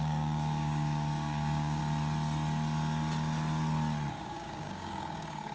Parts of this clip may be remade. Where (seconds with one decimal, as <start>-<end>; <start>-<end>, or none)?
0.0-1.8; 4.1-5.5